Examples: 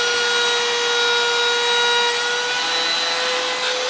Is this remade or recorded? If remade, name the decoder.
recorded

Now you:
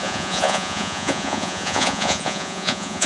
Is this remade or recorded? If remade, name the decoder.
remade, vocoder, Vocos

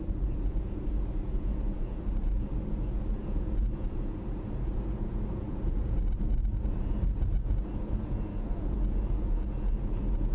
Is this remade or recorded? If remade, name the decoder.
remade, vocoder, Vocos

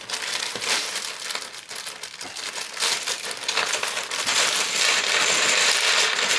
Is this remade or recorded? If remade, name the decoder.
remade, vocoder, BigVGAN v2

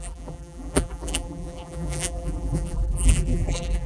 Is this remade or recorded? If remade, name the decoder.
remade, vocoder, BigVGAN v2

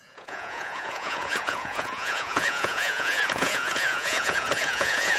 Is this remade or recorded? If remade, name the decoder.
remade, vocoder, Vocos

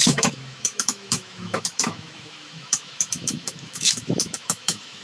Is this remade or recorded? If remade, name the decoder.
remade, autoencoder, DAC-VAE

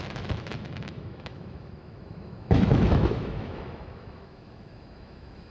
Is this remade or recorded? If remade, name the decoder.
remade, autoencoder, DAC-VAE